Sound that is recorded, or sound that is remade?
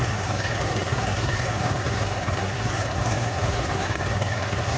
remade